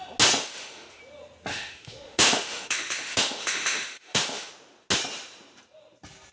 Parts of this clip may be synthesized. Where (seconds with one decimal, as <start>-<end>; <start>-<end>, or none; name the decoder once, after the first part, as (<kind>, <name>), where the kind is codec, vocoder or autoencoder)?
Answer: 0.4-1.0 (autoencoder, DAC-VAE); 1.5-4.5